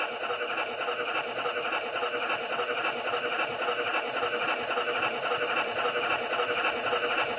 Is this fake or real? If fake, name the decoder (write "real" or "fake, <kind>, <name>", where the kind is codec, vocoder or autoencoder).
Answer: real